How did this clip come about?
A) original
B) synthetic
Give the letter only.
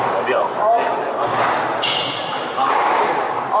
A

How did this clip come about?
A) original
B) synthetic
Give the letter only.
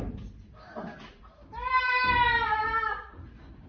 A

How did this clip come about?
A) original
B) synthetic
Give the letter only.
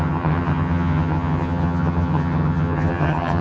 B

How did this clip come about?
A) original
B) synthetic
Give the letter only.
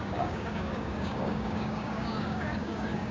B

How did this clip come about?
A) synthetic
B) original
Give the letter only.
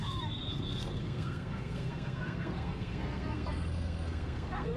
A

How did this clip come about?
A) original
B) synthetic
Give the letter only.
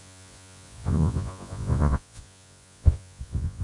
B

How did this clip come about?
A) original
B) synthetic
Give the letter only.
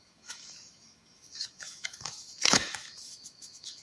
B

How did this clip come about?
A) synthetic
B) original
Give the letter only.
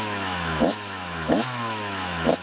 A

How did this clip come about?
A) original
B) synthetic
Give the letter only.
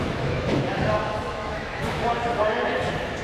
B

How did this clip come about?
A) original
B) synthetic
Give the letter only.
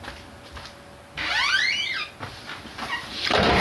A